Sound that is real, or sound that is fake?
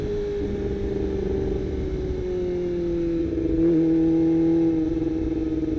real